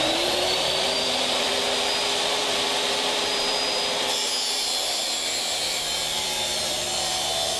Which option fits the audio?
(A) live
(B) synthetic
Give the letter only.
B